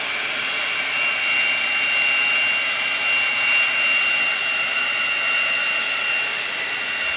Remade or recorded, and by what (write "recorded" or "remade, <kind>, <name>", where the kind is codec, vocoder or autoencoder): recorded